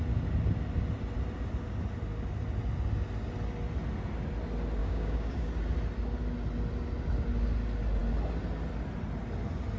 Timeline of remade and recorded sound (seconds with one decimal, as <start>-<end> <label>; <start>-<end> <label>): 0.0-4.8 recorded; 4.8-5.5 remade; 5.5-9.8 recorded